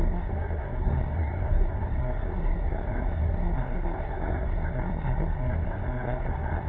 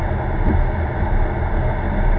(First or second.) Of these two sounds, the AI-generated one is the first